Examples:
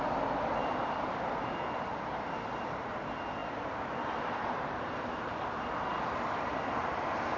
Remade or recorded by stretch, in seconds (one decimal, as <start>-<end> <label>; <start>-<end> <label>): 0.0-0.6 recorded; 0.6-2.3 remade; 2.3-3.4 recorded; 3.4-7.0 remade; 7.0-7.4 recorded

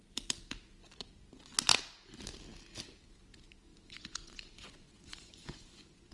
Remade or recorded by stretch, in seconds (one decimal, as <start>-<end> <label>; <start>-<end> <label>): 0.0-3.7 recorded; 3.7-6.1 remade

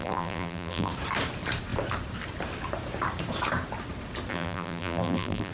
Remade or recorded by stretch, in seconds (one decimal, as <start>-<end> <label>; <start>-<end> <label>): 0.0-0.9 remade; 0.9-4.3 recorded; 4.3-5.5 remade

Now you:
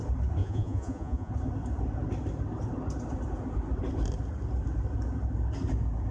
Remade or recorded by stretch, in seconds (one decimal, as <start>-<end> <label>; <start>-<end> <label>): 0.0-0.4 recorded; 0.4-1.3 remade; 1.3-6.1 recorded